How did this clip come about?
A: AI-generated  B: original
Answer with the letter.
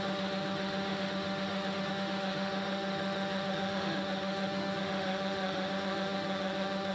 A